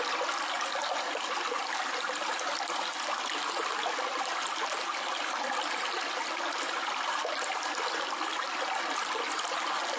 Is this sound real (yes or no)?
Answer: yes